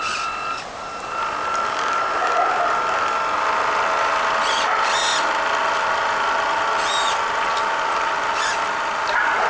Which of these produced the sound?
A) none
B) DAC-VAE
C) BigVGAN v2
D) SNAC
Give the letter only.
A